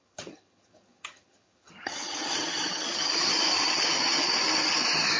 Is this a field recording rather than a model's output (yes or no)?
no